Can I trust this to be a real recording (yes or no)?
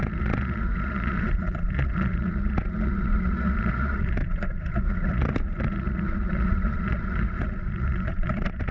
no